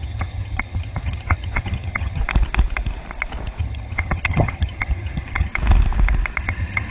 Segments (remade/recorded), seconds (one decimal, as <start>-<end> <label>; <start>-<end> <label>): 0.0-2.2 remade; 2.2-3.6 recorded; 3.6-5.5 remade; 5.5-6.4 recorded; 6.4-6.9 remade